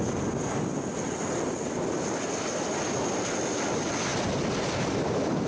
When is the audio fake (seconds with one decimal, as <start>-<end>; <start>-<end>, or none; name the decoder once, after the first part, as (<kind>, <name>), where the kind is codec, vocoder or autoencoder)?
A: none